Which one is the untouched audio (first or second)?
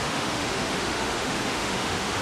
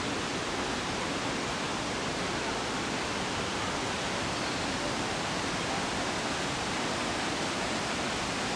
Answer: second